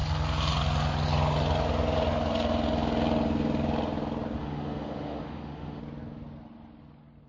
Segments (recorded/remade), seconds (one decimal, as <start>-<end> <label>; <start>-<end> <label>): 0.0-4.4 recorded; 4.4-5.8 remade; 5.8-7.3 recorded